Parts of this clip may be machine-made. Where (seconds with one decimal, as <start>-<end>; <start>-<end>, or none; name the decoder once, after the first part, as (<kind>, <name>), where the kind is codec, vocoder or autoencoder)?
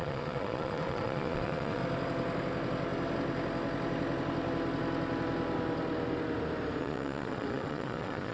0.0-1.8 (vocoder, Vocos); 6.8-8.3